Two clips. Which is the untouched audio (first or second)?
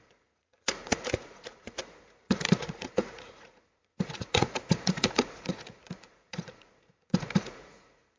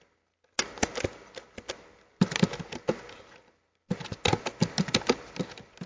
second